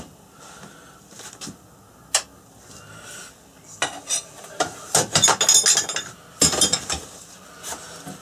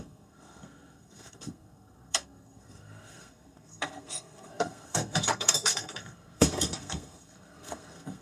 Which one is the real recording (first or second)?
first